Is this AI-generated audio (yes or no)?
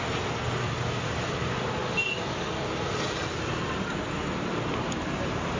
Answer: no